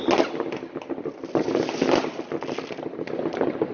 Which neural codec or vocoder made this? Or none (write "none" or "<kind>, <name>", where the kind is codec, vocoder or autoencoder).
none